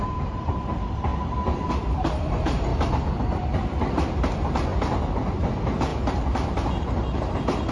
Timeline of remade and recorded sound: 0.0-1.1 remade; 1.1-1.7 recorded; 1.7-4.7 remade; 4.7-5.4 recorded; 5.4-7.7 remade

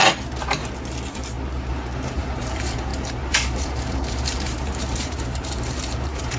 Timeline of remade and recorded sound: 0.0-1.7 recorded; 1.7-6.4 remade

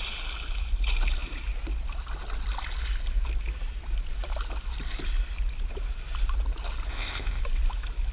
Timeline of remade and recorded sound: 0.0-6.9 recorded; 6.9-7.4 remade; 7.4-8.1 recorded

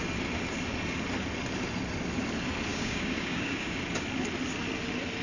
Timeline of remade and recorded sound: 0.0-2.7 recorded; 2.7-3.8 remade; 3.8-5.2 recorded